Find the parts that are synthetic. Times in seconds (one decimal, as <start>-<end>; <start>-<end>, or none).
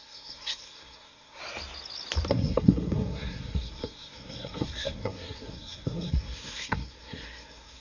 0.0-1.4; 2.3-7.8